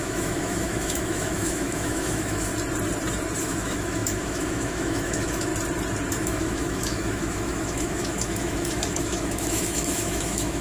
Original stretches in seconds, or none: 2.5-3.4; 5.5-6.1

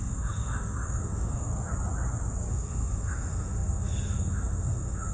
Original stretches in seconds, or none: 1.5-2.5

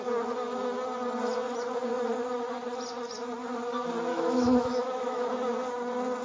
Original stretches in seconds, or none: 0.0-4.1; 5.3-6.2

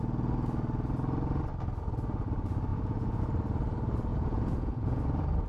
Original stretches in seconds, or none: 0.0-2.7; 3.2-4.1; 5.0-5.5

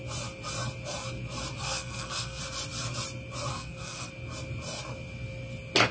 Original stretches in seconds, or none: 0.0-1.6; 2.4-3.5; 4.1-5.9